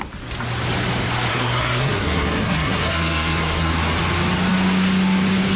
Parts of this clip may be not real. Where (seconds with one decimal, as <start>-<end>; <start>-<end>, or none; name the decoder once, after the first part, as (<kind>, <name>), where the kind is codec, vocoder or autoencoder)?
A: 1.3-3.7 (codec, SNAC)